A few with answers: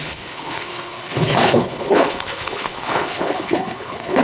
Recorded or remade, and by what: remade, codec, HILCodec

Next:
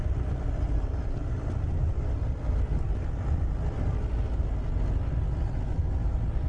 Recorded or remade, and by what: recorded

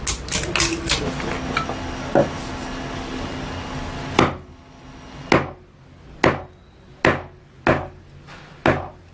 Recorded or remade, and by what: recorded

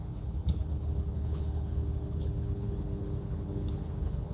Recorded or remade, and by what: remade, codec, HILCodec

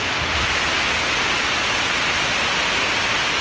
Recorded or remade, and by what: recorded